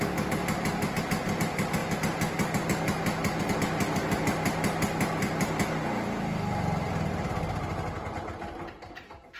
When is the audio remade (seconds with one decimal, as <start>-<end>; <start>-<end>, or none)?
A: none